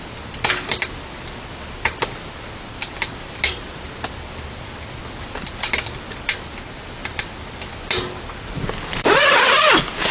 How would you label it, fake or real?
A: real